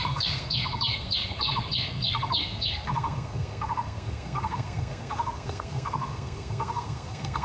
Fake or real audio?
fake